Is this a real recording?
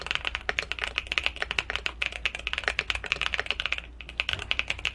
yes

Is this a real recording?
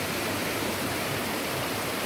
no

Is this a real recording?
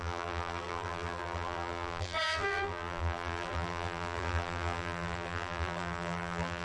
no